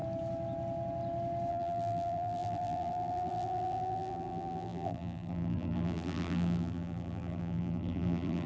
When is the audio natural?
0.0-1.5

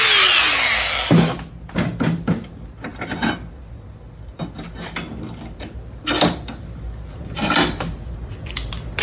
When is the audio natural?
0.0-9.0

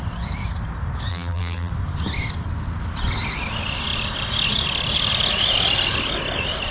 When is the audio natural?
0.0-1.1; 1.7-6.7

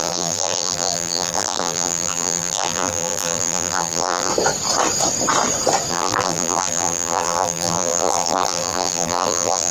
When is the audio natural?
4.3-5.9

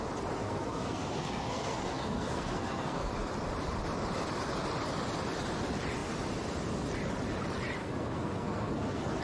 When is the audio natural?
0.0-0.4; 3.1-7.8

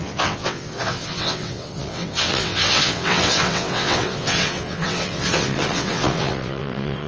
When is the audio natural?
none

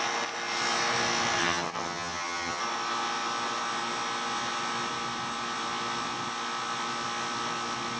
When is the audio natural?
0.0-1.4; 2.6-8.0

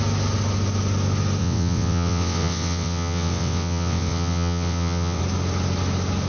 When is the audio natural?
0.0-1.4; 5.2-6.3